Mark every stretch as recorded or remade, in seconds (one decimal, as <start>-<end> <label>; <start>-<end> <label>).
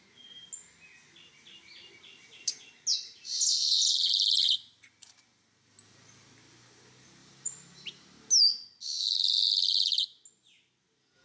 0.0-2.9 recorded; 2.9-4.1 remade; 4.1-7.2 recorded; 7.2-8.2 remade; 8.2-11.2 recorded